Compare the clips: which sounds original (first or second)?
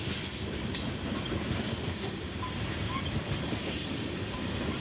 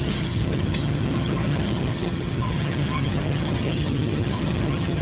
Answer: first